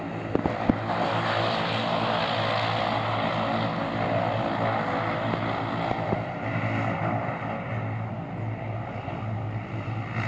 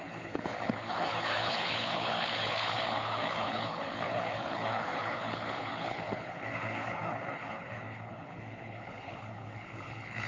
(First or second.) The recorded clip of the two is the first